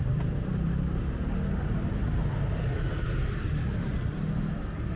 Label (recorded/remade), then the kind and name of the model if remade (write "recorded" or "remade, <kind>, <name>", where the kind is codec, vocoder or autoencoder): recorded